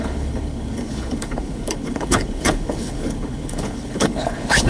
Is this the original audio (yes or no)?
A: no